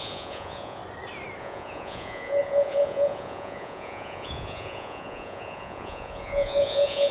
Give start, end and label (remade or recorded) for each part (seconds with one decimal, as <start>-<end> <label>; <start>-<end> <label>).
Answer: 0.0-0.8 remade; 0.8-1.4 recorded; 1.4-7.1 remade